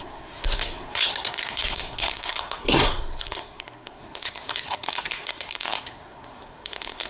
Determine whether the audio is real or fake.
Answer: fake